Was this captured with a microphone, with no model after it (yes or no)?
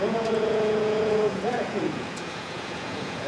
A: no